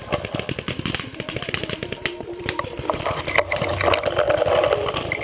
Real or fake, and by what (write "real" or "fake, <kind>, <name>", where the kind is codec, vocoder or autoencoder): real